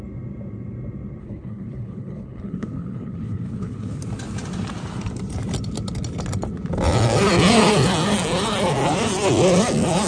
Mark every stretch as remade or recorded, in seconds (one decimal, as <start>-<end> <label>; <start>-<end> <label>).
0.0-1.2 recorded; 1.2-4.0 remade; 4.0-10.1 recorded